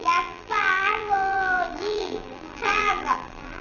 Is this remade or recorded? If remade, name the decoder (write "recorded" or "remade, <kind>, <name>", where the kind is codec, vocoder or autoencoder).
remade, vocoder, BigVGAN v2